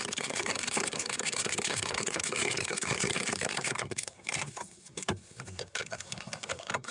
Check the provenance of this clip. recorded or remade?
remade